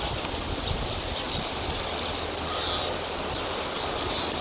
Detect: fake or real real